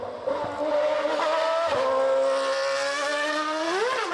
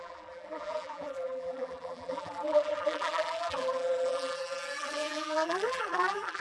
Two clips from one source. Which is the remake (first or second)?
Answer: second